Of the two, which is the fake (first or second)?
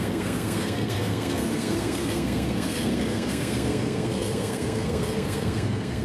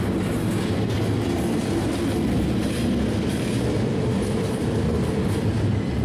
first